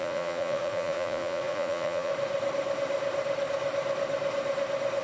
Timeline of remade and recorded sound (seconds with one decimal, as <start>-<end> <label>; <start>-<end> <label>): 0.0-2.1 remade; 2.1-5.0 recorded